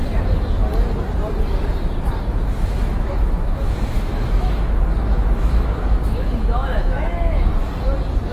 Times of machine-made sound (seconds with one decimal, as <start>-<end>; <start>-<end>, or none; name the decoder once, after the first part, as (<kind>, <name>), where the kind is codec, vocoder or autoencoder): 2.3-7.5 (autoencoder, DAC-VAE)